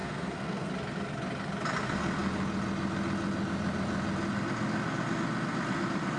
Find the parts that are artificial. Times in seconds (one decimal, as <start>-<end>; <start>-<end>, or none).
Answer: 0.0-0.7